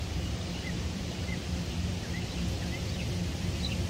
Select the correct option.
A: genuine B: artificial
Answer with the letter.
B